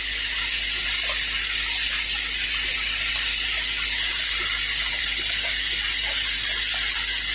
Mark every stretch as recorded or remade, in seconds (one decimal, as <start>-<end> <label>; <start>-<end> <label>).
0.0-7.3 recorded